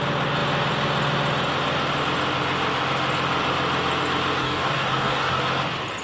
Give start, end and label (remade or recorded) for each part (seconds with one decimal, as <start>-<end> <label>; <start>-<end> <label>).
0.0-4.4 recorded; 4.4-5.4 remade; 5.4-6.0 recorded